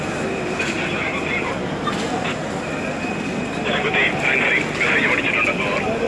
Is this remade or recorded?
recorded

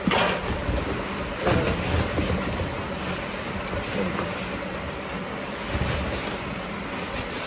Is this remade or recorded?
recorded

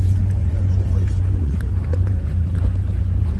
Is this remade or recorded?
remade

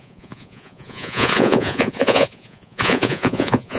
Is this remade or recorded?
remade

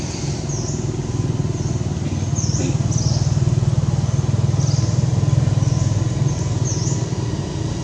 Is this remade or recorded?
recorded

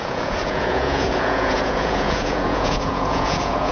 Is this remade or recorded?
remade